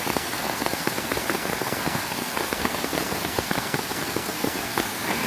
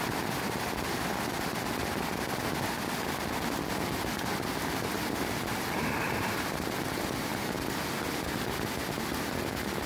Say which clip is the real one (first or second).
second